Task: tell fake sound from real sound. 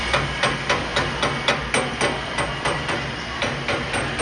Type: real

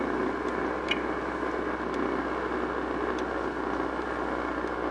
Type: real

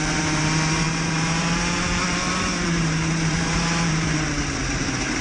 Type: fake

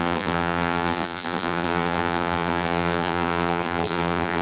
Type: fake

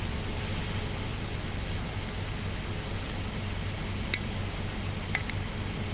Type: real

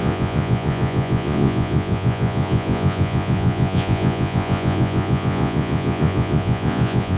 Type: fake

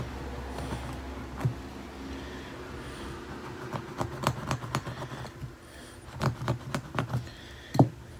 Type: real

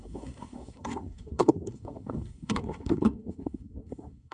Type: fake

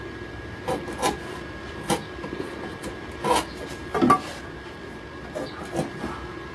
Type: real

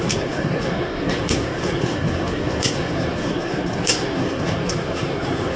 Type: fake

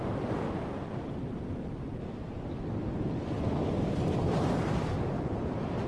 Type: real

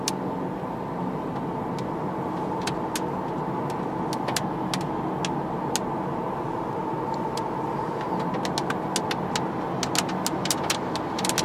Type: real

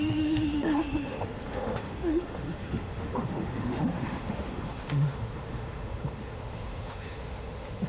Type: fake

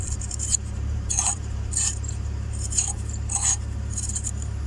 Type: fake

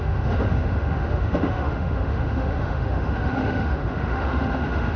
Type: fake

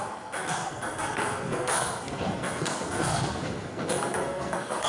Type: fake